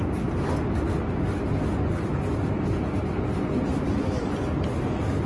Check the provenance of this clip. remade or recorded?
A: recorded